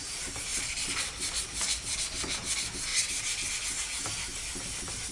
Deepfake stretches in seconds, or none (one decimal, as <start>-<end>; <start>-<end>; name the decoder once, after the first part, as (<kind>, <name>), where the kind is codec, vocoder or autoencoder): 0.5-1.7 (vocoder, BigVGAN v2); 2.9-3.5